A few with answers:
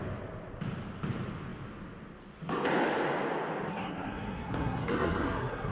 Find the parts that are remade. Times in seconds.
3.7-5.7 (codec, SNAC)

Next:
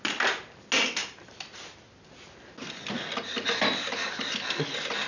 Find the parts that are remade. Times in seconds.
none

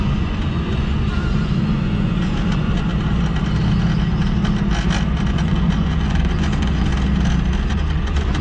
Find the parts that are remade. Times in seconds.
0.0-2.9 (vocoder, Vocos); 5.3-6.9; 7.7-8.4

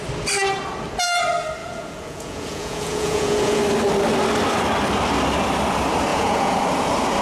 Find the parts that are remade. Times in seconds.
1.6-3.6 (vocoder, Vocos); 6.1-6.6

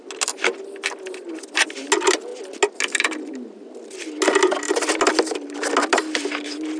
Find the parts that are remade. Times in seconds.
none

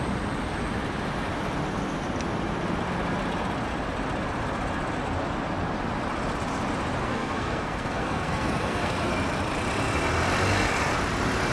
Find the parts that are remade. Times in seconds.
7.0-9.1 (codec, SNAC)